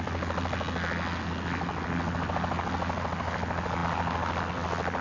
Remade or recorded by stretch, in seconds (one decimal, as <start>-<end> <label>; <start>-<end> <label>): 0.0-5.0 recorded